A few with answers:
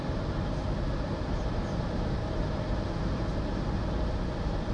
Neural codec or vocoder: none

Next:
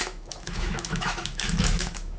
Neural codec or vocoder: autoencoder, DAC-VAE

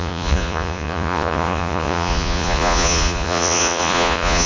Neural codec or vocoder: vocoder, Vocos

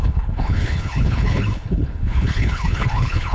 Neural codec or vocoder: codec, HILCodec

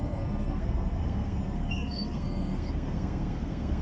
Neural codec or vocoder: codec, SNAC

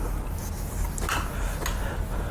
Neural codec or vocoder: none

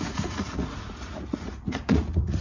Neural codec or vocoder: vocoder, Vocos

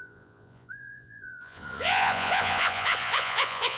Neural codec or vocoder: vocoder, Vocos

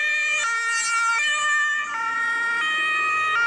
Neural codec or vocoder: none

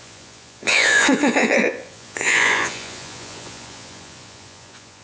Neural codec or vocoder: vocoder, Vocos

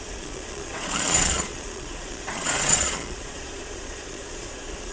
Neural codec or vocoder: vocoder, Vocos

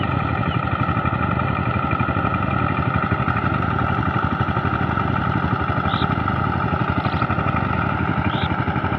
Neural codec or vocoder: none